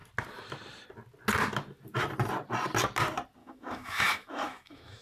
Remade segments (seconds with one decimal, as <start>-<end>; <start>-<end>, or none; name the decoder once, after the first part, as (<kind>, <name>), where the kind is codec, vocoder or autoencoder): 3.4-5.0 (autoencoder, DAC-VAE)